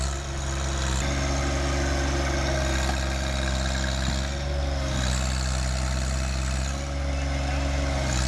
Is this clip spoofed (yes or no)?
no